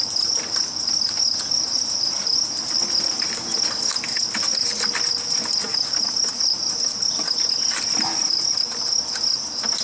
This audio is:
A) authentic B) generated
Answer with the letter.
A